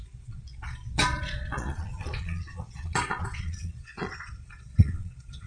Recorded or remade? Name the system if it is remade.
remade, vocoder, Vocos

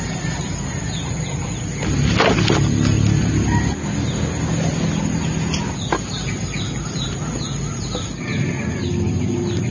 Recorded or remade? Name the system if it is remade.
recorded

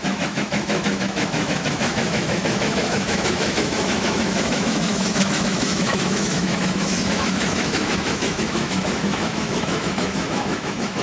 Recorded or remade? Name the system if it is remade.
remade, autoencoder, DAC-VAE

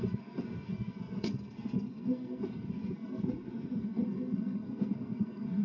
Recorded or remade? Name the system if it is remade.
remade, codec, SNAC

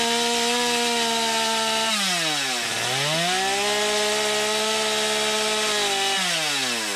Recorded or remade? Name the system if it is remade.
recorded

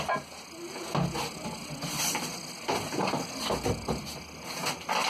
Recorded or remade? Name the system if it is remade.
recorded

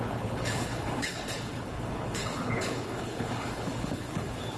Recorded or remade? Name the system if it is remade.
remade, codec, HILCodec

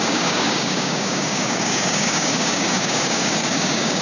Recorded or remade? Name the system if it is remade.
remade, codec, DAC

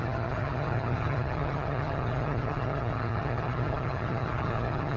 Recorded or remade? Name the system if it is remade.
remade, vocoder, HiFi-GAN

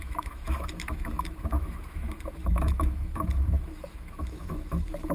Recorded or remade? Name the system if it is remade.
remade, autoencoder, DAC-VAE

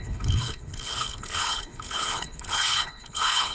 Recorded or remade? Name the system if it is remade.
remade, codec, HILCodec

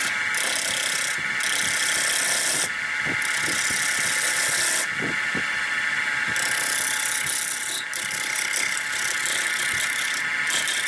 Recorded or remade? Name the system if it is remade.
recorded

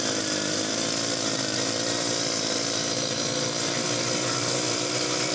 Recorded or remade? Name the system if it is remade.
remade, vocoder, BigVGAN v2